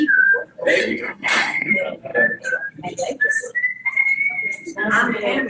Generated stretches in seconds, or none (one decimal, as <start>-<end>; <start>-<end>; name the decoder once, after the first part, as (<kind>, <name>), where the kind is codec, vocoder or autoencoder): 0.8-1.7 (codec, SNAC)